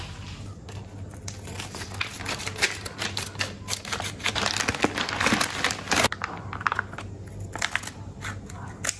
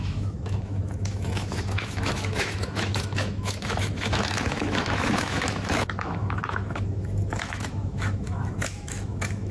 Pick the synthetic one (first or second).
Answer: second